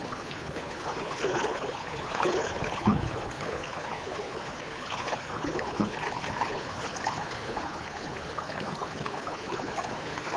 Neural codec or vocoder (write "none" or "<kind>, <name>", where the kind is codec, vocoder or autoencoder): codec, HILCodec